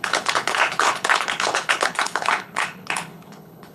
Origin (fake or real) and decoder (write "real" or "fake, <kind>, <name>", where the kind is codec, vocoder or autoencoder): fake, codec, HILCodec